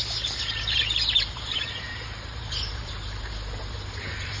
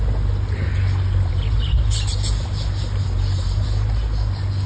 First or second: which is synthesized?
first